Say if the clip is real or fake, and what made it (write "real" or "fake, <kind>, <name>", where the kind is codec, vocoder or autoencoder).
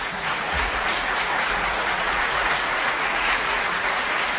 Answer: fake, vocoder, Vocos